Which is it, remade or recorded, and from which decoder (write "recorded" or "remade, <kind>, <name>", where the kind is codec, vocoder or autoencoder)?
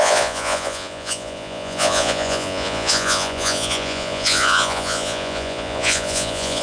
remade, vocoder, Vocos